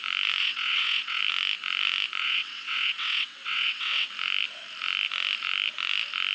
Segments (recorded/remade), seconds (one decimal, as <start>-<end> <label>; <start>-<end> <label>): 0.0-0.4 recorded; 0.4-1.2 remade; 1.2-2.2 recorded; 2.2-4.1 remade; 4.1-6.3 recorded